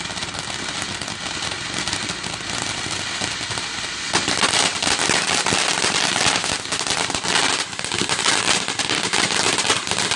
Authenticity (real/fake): real